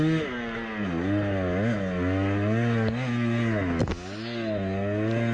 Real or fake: real